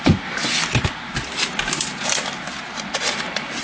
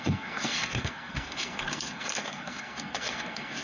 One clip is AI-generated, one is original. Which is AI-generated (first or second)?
second